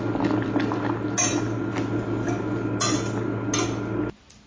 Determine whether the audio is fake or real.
real